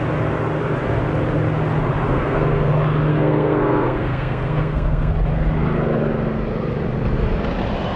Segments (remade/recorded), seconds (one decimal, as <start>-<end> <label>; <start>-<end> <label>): 0.0-2.0 recorded; 2.0-2.7 remade; 2.7-3.1 recorded; 3.1-5.1 remade; 5.1-8.0 recorded